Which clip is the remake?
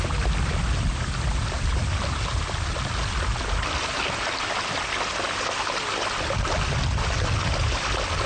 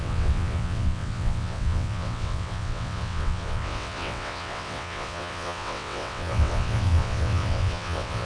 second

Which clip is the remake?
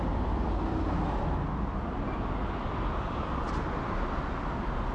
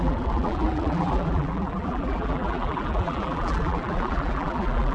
second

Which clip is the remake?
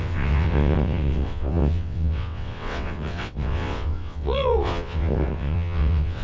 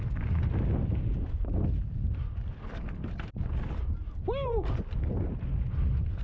first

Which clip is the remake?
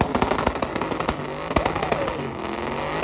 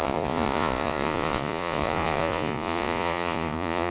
second